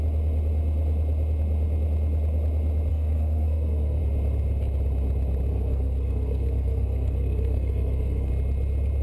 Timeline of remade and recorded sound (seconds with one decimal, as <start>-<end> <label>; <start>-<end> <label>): 0.0-2.9 recorded; 2.9-4.0 remade; 4.0-5.5 recorded; 5.5-8.3 remade; 8.3-9.0 recorded